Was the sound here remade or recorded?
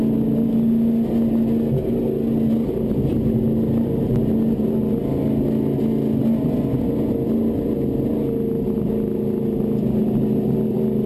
recorded